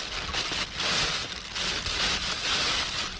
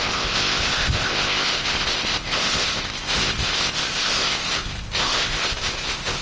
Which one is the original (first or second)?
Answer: first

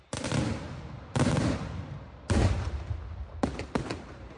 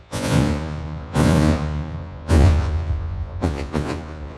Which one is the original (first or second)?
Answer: first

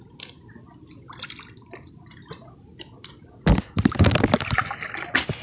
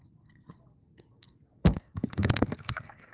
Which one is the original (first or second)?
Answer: first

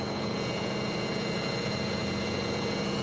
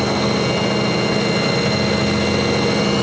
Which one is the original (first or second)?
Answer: second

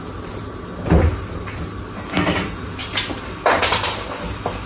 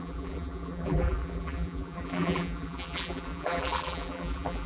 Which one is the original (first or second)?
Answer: first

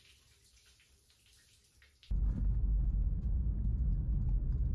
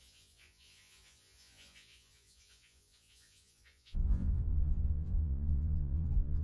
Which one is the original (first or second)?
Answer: first